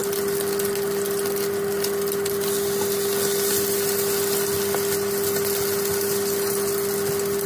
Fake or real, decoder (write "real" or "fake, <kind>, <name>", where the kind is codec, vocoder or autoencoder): real